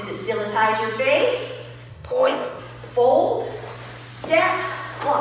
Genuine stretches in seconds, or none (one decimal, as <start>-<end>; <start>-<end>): 0.0-1.9; 2.6-5.2